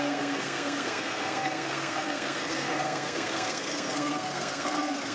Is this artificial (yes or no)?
yes